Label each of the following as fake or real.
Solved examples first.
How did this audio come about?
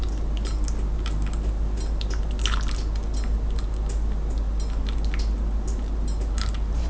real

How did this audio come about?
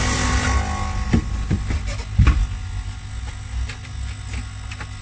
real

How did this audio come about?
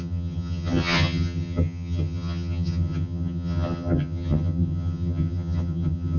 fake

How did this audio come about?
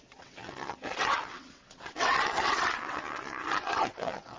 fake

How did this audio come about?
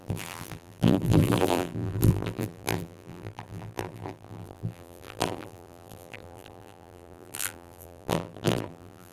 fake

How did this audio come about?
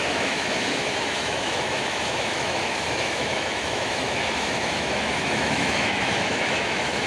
fake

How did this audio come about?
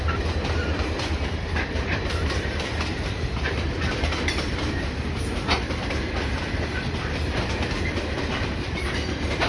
fake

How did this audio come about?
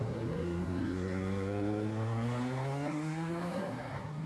fake